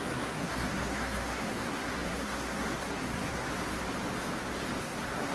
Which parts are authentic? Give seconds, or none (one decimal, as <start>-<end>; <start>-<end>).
3.5-4.8